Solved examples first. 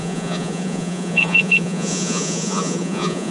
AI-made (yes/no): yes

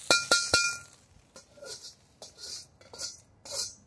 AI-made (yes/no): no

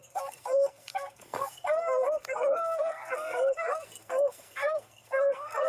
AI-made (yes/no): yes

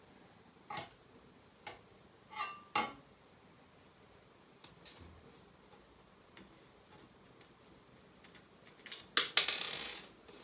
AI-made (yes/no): no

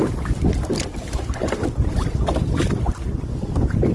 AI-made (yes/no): no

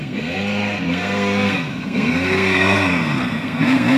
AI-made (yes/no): yes